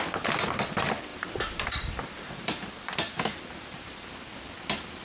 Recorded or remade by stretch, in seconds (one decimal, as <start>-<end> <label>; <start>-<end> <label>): 0.0-1.1 recorded; 1.1-4.1 remade; 4.1-5.0 recorded